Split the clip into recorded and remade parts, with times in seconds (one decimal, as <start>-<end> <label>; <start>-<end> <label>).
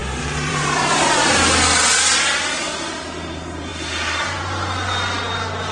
0.0-1.4 remade; 1.4-5.7 recorded